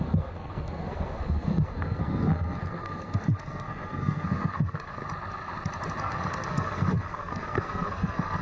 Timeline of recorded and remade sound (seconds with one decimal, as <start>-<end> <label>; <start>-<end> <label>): 0.0-5.0 remade; 5.0-6.0 recorded; 6.0-8.4 remade